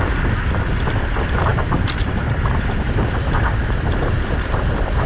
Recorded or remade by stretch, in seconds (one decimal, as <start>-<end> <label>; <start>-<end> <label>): 0.0-1.5 recorded; 1.5-4.6 remade; 4.6-5.1 recorded